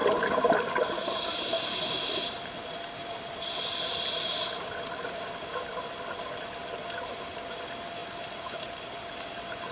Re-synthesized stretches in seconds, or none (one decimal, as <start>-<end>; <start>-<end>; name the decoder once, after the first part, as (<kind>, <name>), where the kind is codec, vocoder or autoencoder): 0.0-5.3 (vocoder, BigVGAN v2)

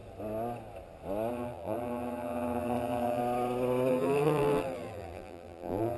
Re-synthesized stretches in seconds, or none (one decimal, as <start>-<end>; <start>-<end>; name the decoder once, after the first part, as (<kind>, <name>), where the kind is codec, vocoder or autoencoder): 1.3-3.2 (vocoder, BigVGAN v2); 3.9-6.0

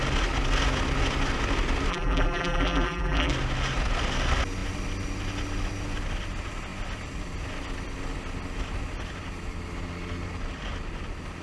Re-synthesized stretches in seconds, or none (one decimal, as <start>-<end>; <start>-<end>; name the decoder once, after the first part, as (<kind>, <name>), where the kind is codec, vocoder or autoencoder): 1.9-3.3 (vocoder, BigVGAN v2)

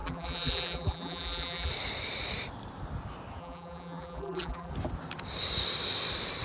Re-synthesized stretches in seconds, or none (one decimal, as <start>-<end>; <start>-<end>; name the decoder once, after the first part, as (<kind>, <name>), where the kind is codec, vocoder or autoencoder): 0.0-1.7 (vocoder, BigVGAN v2); 3.4-4.7

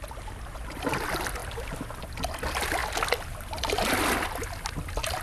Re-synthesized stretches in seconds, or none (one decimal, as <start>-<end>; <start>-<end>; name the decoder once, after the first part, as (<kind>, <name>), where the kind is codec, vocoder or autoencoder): none

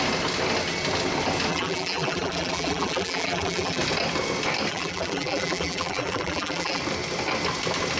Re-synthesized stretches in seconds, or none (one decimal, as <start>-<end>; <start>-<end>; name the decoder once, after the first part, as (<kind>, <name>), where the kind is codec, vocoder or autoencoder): 1.5-3.8 (vocoder, BigVGAN v2); 4.7-6.8